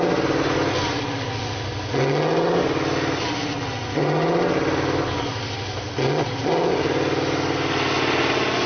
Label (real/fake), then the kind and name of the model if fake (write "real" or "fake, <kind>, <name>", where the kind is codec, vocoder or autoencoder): real